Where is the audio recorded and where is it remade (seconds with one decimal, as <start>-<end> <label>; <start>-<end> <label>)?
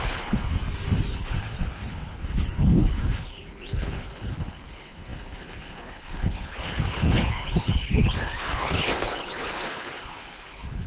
0.0-0.6 remade; 0.6-1.1 recorded; 1.1-10.9 remade